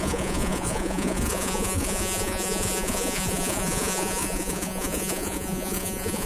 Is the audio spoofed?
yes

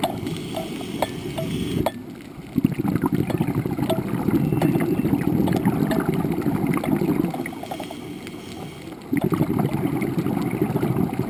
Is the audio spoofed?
no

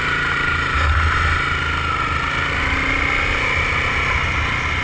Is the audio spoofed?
no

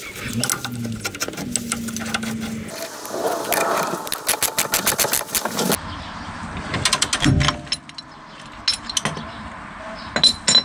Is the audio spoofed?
no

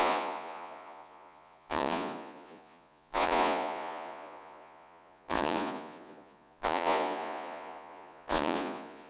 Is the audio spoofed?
yes